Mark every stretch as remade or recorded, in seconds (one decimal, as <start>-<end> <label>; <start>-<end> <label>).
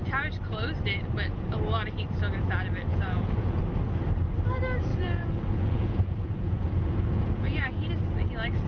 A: 0.0-2.9 recorded; 2.9-3.6 remade; 3.6-4.9 recorded; 4.9-7.9 remade; 7.9-8.7 recorded